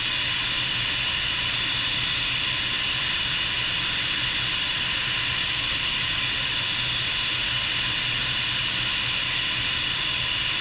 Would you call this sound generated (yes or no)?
no